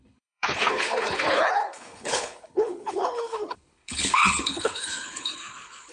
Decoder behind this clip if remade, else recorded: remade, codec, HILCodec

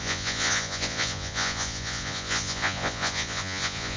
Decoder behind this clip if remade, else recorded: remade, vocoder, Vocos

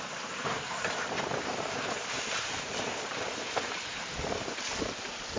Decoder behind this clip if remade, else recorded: remade, vocoder, BigVGAN v2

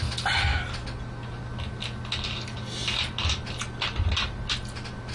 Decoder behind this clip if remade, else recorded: recorded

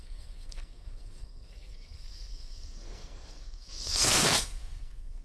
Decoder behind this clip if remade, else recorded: remade, codec, SNAC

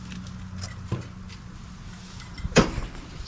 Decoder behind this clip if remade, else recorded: recorded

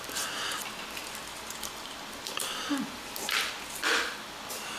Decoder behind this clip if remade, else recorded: recorded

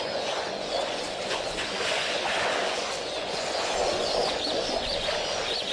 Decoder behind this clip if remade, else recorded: remade, vocoder, Vocos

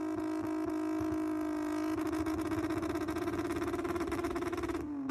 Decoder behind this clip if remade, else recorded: recorded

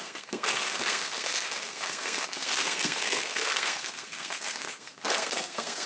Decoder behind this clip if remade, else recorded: remade, codec, SNAC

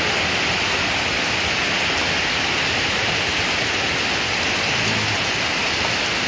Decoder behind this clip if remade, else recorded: recorded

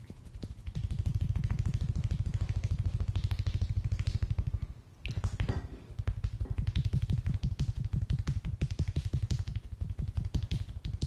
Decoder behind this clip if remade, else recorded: recorded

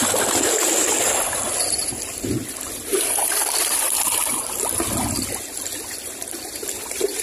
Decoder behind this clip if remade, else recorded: remade, vocoder, BigVGAN v2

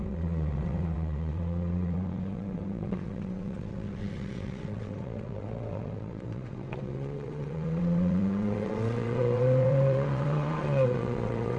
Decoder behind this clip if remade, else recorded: remade, vocoder, WaveNeXt